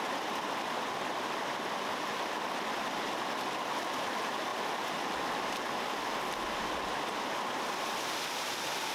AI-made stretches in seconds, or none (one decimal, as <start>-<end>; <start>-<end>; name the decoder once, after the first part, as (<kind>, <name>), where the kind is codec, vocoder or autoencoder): none